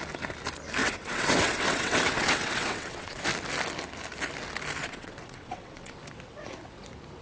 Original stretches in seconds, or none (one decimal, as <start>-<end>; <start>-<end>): 0.0-0.8; 3.2-4.8; 6.0-7.2